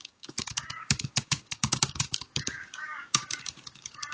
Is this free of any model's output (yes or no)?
no